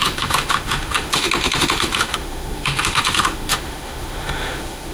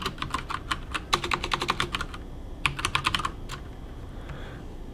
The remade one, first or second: first